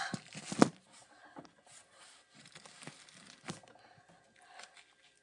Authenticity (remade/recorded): recorded